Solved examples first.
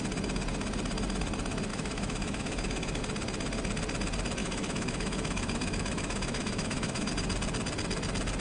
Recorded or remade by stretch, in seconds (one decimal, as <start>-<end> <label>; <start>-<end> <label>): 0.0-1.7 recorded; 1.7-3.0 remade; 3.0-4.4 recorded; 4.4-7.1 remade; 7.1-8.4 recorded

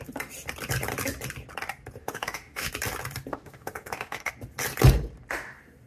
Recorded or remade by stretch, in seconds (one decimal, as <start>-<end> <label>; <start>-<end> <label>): 0.0-2.0 recorded; 2.0-2.7 remade; 2.7-3.3 recorded; 3.3-4.3 remade; 4.3-5.9 recorded

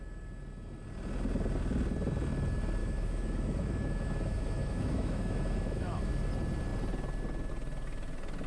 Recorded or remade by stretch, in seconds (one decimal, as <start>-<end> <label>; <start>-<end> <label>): 0.0-2.8 recorded; 2.8-6.1 remade; 6.1-8.5 recorded

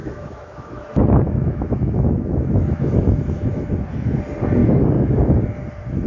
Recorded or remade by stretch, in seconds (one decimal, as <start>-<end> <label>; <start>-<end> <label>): 0.0-3.7 remade; 3.7-4.6 recorded; 4.6-5.2 remade; 5.2-6.1 recorded

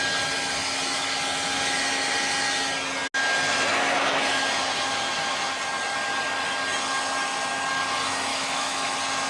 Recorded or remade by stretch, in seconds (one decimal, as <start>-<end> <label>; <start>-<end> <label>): 0.0-8.3 recorded; 8.3-8.9 remade; 8.9-9.3 recorded

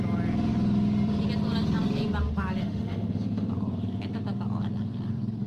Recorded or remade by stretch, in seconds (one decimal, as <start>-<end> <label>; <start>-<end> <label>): 0.0-2.6 recorded; 2.6-3.5 remade; 3.5-5.5 recorded